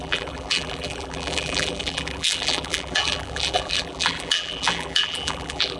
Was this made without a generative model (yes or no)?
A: no